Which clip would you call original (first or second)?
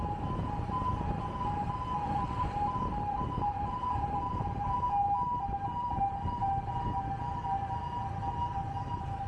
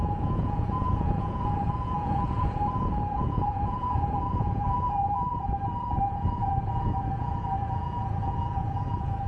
first